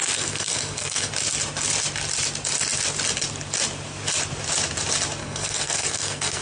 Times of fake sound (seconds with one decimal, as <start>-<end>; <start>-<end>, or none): 0.0-1.1; 5.2-6.4